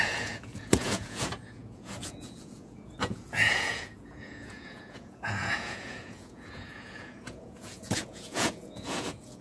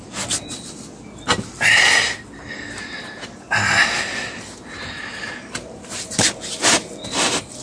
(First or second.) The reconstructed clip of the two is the first